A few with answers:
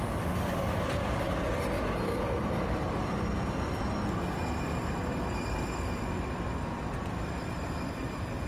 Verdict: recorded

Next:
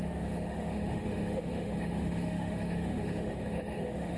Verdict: remade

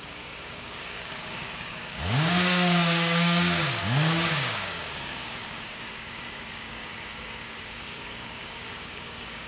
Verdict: remade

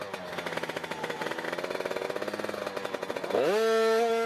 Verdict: recorded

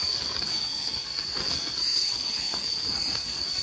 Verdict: remade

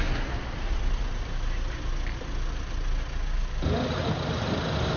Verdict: recorded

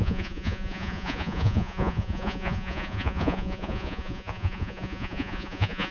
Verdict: remade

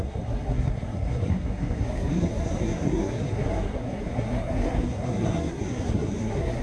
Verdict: remade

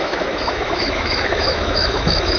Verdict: remade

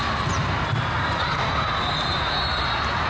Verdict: remade